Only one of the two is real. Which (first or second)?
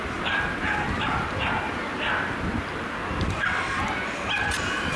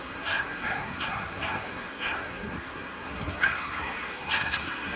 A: first